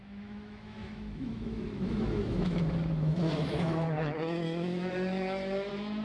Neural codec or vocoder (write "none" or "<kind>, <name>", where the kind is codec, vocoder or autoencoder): autoencoder, DAC-VAE